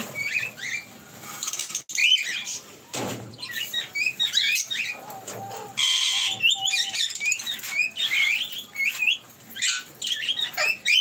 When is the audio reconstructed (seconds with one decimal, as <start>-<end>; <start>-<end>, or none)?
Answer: 2.0-3.3

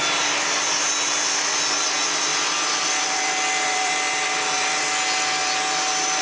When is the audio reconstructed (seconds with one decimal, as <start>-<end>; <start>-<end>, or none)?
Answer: 2.3-4.8; 5.4-6.2

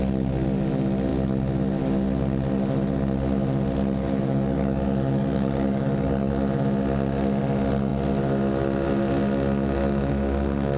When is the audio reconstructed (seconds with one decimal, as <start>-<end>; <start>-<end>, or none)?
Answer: 4.0-6.3

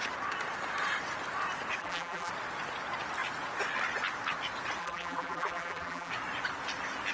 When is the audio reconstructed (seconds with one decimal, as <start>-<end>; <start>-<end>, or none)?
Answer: 1.8-2.3; 4.8-6.1

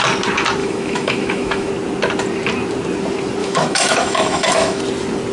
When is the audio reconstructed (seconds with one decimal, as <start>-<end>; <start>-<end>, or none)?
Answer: 0.6-1.7; 3.4-4.8